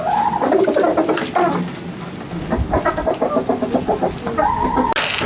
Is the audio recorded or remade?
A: recorded